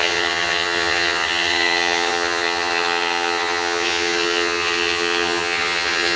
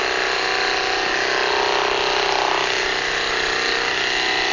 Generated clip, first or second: first